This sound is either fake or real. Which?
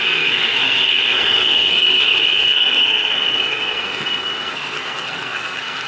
fake